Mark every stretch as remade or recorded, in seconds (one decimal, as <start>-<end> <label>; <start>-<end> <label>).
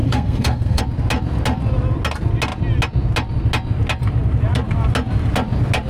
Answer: 0.0-0.8 remade; 0.8-5.9 recorded